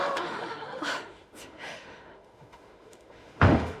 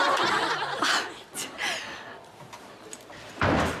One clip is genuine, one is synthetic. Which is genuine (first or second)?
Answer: second